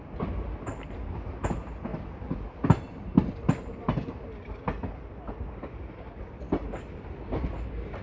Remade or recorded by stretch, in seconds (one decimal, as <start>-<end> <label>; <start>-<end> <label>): 0.0-8.0 recorded